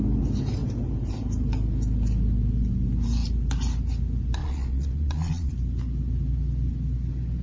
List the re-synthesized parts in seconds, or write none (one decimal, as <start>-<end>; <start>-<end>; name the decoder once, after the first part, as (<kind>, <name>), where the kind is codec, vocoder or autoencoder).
4.4-5.5 (vocoder, Vocos)